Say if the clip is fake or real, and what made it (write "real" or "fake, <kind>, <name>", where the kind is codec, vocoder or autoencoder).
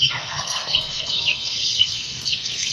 fake, codec, SNAC